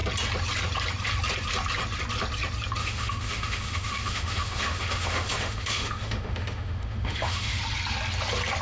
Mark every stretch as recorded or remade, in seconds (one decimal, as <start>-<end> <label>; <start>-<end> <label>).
0.0-2.8 recorded; 2.8-7.6 remade; 7.6-8.6 recorded